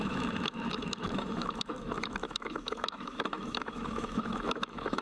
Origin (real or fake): fake